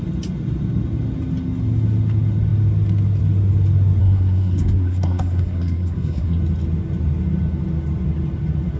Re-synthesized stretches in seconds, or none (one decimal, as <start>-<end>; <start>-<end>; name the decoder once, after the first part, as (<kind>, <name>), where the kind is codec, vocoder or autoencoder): 4.0-6.4 (codec, SNAC)